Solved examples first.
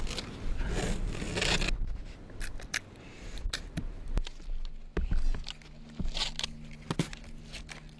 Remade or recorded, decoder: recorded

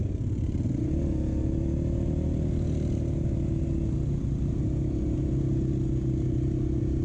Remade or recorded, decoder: recorded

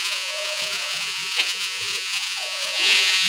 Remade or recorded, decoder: remade, vocoder, Vocos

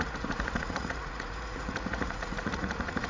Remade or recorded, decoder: remade, vocoder, Vocos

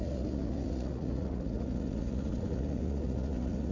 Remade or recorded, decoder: remade, vocoder, Vocos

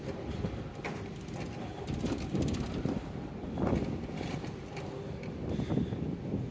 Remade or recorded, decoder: recorded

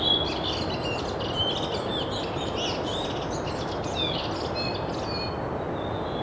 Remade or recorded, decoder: recorded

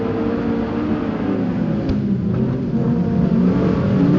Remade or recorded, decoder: recorded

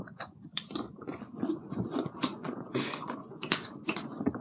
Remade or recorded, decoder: remade, vocoder, Vocos